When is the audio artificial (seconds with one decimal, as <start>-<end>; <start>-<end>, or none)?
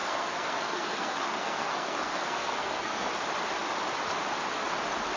0.0-3.1